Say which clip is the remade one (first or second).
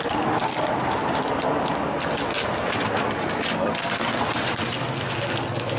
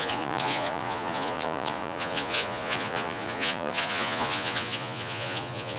second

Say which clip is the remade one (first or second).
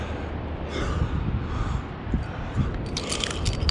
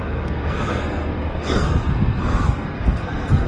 second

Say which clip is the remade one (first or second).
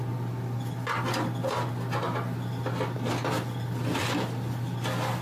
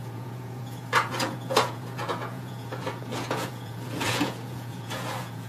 second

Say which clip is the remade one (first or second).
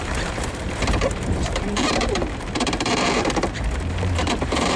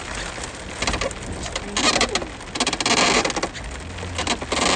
first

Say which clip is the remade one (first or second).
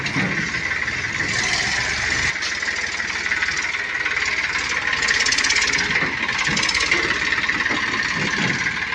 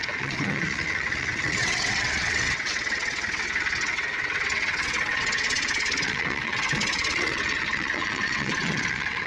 second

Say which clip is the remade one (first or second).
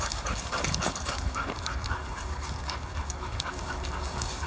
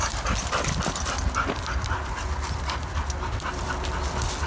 first